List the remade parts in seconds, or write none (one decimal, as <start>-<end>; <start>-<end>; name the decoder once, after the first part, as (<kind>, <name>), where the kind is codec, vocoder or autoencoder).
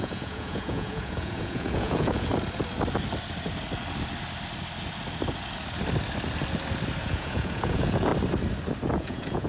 0.0-2.3 (vocoder, Vocos); 7.0-8.1; 8.9-9.5